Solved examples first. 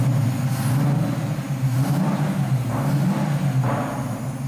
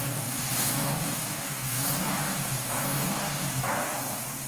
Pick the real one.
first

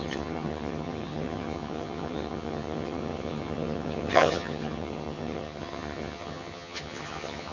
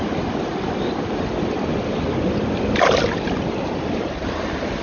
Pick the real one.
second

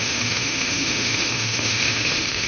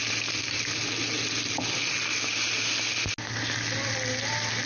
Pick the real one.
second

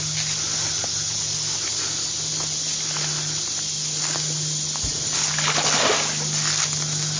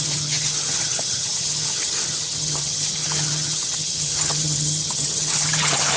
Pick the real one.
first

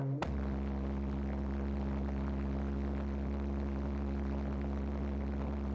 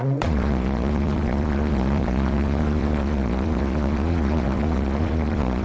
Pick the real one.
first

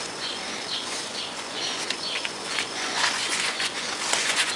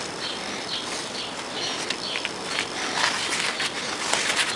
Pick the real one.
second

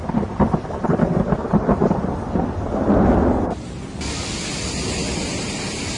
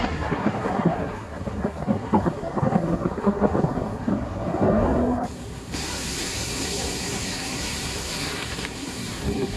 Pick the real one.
first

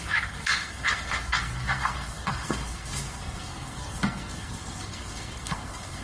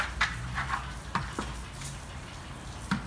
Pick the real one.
second